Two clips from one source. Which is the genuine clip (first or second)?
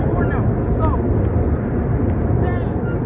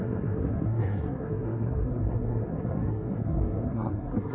first